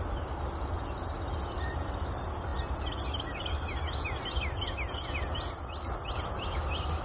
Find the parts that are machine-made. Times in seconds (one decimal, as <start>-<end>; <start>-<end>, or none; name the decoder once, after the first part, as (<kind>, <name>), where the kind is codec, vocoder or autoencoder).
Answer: none